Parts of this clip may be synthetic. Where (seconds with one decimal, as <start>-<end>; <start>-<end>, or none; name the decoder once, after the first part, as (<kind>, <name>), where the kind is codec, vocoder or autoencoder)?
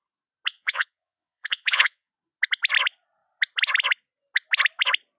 0.5-2.1 (vocoder, WaveNeXt)